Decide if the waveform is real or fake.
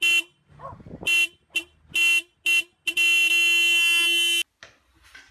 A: real